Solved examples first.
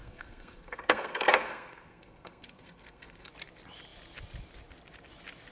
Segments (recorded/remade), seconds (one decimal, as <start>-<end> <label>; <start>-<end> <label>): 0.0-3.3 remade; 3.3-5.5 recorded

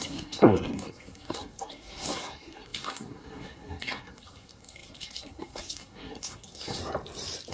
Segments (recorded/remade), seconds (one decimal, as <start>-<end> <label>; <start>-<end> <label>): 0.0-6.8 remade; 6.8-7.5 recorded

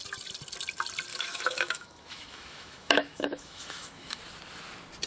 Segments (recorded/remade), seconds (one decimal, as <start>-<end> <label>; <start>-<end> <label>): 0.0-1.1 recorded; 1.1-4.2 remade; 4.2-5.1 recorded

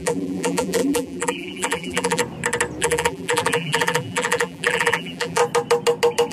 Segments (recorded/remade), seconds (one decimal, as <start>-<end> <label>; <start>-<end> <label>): 0.0-2.2 remade; 2.2-2.8 recorded; 2.8-5.4 remade; 5.4-6.3 recorded

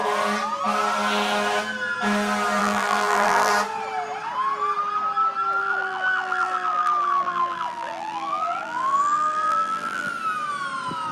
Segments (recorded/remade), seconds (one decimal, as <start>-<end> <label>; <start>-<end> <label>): 0.0-2.6 recorded; 2.6-3.5 remade; 3.5-5.6 recorded; 5.6-10.1 remade; 10.1-11.1 recorded

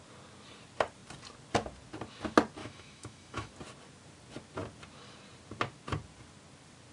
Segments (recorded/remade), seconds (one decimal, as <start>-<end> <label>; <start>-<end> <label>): 0.0-2.6 recorded; 2.6-3.5 remade; 3.5-6.9 recorded